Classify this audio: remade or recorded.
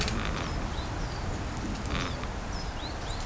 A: recorded